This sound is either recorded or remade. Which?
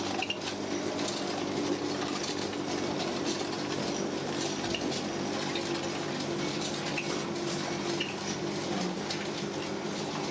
recorded